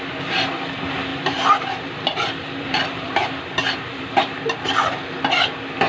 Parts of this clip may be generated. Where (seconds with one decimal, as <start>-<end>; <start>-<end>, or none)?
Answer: 1.1-4.4

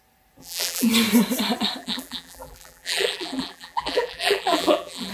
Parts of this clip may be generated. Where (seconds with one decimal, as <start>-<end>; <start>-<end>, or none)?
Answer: 0.4-0.9; 1.8-5.1

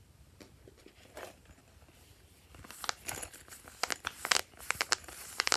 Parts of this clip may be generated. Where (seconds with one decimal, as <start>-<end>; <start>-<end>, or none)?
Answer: 0.0-1.6; 4.4-5.6

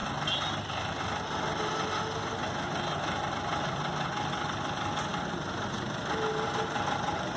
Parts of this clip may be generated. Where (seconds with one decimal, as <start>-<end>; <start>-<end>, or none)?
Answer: none

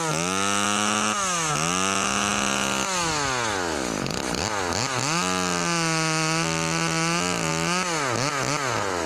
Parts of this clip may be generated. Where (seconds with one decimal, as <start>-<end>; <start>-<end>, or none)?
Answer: none